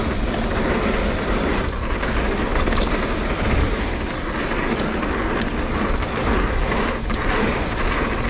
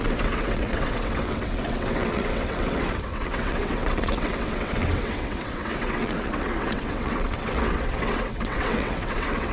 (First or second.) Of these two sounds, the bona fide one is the first